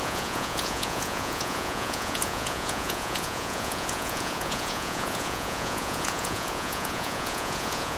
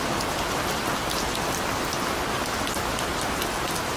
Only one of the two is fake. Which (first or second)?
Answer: first